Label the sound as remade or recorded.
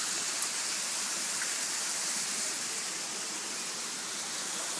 recorded